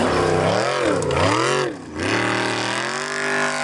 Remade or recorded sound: recorded